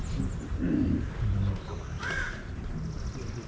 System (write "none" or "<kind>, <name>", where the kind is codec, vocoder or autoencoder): none